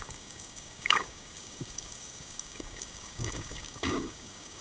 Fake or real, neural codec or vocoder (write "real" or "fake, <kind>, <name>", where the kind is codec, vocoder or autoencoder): fake, codec, DAC